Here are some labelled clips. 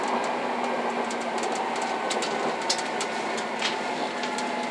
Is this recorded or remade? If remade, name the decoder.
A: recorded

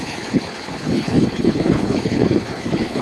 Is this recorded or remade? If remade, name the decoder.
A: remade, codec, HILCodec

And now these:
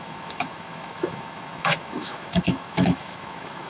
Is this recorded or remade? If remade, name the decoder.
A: remade, autoencoder, DAC-VAE